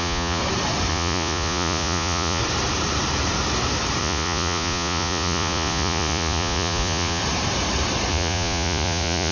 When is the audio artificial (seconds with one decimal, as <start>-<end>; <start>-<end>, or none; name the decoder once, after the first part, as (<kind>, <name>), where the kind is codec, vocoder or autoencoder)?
0.0-0.4 (vocoder, Vocos); 0.9-2.4; 4.0-7.2; 8.1-9.3